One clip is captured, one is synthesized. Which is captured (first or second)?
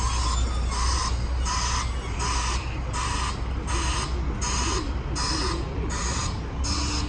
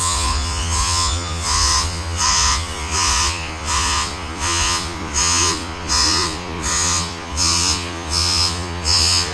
first